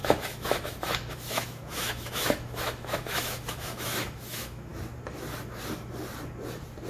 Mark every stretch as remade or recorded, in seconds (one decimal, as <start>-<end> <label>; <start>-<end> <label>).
0.0-4.7 remade; 4.7-6.9 recorded